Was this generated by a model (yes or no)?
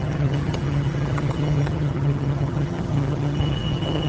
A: yes